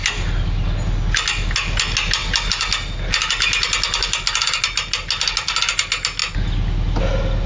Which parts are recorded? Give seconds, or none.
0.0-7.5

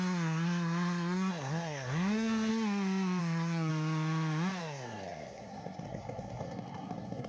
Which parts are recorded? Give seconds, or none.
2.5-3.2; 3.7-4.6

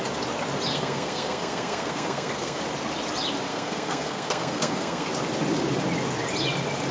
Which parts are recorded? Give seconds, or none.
0.0-0.7; 2.6-3.5; 5.1-6.9